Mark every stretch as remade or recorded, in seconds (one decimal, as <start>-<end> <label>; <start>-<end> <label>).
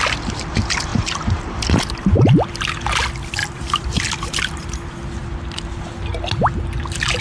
0.0-0.9 recorded; 0.9-2.5 remade; 2.5-3.4 recorded; 3.4-4.0 remade; 4.0-7.2 recorded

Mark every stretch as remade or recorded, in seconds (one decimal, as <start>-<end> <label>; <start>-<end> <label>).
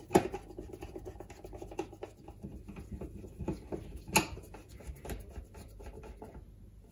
0.0-6.9 recorded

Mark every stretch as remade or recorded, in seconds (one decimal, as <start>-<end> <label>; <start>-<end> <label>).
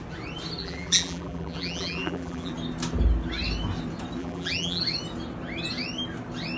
0.0-0.6 recorded; 0.6-2.5 remade; 2.5-4.2 recorded; 4.2-4.8 remade; 4.8-6.6 recorded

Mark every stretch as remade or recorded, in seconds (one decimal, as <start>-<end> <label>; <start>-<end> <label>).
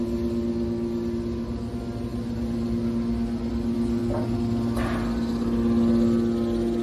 0.0-6.8 recorded